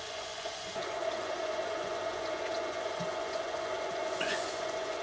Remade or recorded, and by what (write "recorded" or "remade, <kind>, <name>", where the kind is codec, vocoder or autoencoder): remade, vocoder, Vocos